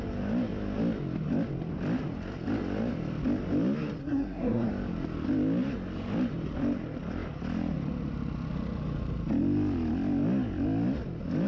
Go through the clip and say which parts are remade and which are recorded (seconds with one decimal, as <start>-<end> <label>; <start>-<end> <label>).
0.0-4.0 recorded; 4.0-4.7 remade; 4.7-11.5 recorded